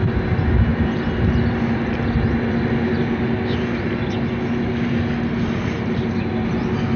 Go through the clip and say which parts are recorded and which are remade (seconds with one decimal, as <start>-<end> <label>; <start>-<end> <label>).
0.0-7.0 recorded